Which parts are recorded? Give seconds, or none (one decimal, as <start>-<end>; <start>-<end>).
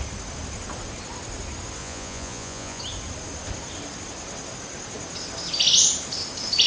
0.0-1.8; 2.8-6.7